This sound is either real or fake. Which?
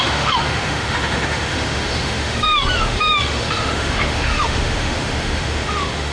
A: fake